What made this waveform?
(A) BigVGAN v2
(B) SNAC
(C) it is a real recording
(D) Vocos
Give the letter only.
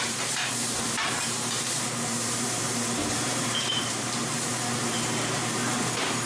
A